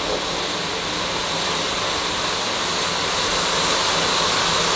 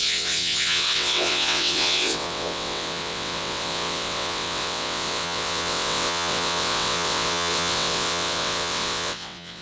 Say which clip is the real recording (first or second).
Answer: first